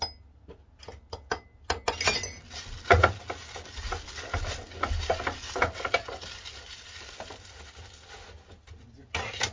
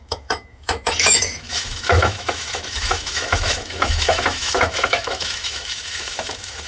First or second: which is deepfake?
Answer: second